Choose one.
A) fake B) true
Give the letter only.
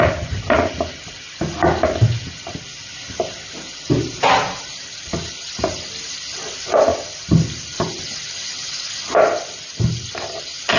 B